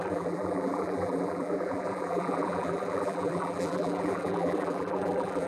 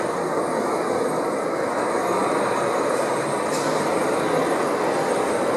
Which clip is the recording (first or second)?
second